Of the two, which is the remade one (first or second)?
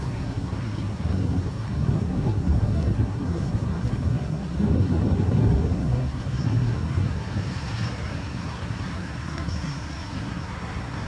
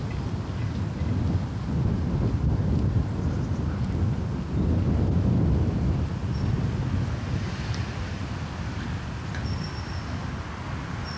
first